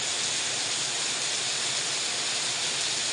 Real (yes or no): yes